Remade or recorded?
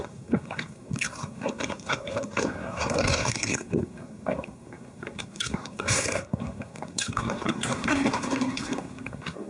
remade